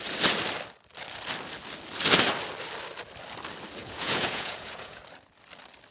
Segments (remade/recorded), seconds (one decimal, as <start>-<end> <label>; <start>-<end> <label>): 0.0-3.8 recorded; 3.8-5.0 remade; 5.0-5.9 recorded